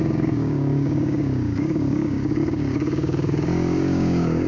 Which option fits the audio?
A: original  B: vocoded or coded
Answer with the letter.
B